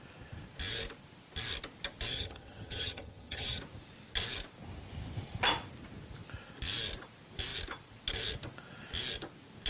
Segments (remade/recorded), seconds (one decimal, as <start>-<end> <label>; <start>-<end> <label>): 0.0-2.1 recorded; 2.1-3.6 remade; 3.6-9.7 recorded